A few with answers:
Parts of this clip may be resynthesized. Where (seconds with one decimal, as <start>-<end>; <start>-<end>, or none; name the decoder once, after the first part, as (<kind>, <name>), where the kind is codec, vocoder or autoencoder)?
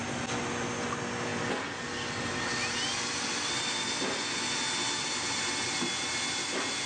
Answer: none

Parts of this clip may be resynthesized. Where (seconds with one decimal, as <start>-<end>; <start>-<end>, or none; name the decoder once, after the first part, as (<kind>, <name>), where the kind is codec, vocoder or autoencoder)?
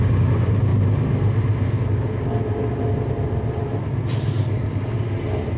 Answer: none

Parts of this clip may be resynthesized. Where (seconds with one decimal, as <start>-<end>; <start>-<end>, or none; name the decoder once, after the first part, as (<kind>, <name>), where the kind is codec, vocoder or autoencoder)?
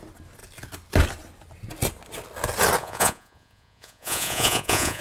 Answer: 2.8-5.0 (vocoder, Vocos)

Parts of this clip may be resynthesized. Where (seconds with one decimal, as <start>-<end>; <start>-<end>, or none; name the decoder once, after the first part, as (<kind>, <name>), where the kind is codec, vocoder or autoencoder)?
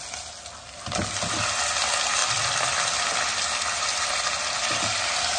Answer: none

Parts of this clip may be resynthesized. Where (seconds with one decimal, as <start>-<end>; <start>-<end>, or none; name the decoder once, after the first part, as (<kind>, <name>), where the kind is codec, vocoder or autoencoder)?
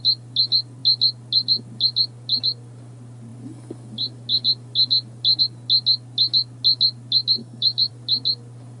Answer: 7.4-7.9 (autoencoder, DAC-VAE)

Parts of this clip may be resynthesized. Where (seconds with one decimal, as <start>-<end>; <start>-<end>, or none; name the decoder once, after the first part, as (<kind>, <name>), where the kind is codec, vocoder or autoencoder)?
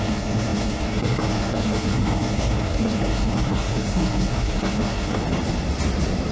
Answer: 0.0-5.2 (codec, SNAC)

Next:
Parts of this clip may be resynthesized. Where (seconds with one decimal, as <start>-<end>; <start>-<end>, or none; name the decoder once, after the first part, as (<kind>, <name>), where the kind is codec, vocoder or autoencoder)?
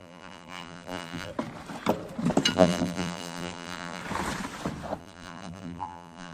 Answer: 0.0-1.3 (vocoder, BigVGAN v2); 2.5-4.0; 5.0-6.3